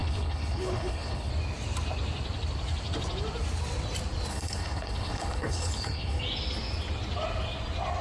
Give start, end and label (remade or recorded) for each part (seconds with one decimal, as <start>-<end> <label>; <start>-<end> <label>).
0.0-1.3 remade; 1.3-4.3 recorded; 4.3-6.2 remade; 6.2-8.0 recorded